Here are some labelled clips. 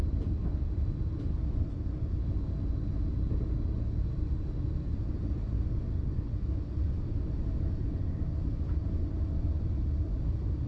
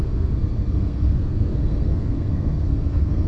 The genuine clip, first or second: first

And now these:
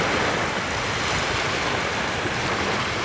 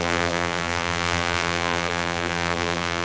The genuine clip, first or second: first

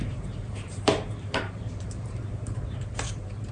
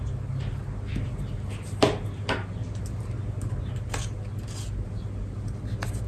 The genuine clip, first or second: second